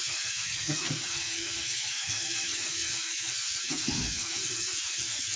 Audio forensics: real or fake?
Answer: fake